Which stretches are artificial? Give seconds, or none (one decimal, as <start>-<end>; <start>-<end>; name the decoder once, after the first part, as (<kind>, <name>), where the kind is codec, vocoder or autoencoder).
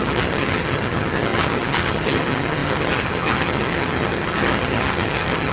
0.0-5.5 (vocoder, HiFi-GAN)